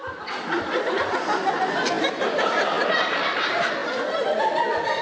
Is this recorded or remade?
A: recorded